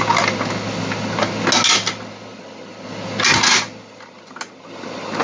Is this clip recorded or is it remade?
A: recorded